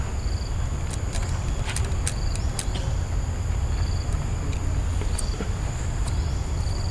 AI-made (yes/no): no